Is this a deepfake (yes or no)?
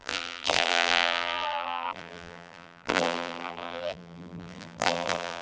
yes